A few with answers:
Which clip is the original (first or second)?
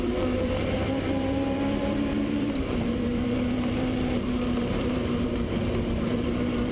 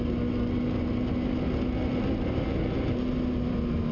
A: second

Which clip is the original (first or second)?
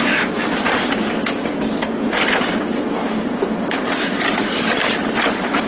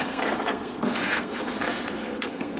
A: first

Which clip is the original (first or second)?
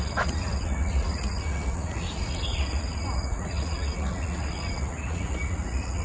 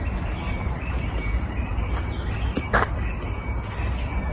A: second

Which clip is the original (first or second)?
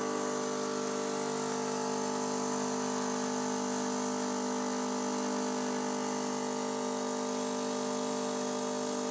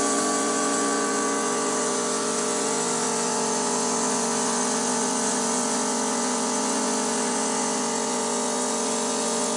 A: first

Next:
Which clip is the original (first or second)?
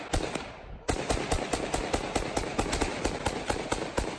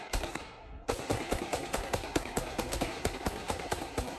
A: first